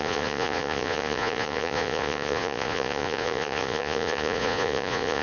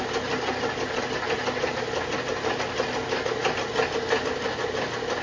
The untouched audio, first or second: second